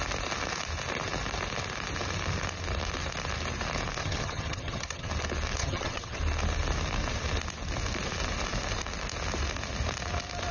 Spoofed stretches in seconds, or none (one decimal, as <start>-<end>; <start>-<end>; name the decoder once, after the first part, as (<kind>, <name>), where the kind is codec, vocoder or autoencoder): 4.0-5.1 (vocoder, HiFi-GAN); 5.6-6.2